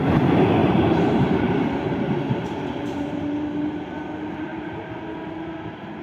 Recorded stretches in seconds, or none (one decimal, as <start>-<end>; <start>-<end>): 0.0-0.6; 3.7-4.5; 5.3-6.0